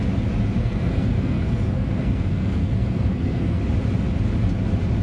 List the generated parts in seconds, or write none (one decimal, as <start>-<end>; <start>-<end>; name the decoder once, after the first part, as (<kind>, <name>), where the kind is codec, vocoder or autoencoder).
0.6-3.6 (codec, SNAC)